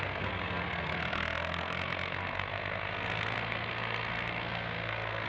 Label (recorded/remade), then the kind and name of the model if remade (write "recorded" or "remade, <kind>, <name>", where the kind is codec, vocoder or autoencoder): remade, codec, SNAC